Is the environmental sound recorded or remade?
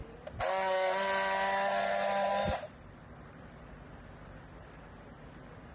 recorded